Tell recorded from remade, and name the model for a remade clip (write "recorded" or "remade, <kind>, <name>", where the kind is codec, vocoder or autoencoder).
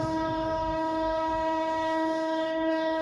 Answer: remade, codec, DAC